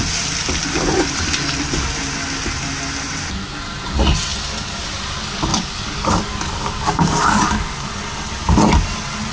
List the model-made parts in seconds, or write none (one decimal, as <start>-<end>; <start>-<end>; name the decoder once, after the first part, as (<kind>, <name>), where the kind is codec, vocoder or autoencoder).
5.5-7.9 (codec, DAC)